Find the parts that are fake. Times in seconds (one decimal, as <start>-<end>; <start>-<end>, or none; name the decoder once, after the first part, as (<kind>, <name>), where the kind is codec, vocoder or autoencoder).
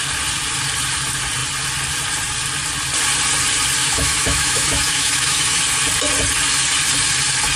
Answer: 3.8-5.6 (autoencoder, DAC-VAE)